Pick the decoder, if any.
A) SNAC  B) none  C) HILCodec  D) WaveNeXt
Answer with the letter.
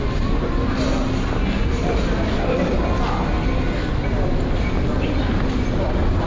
B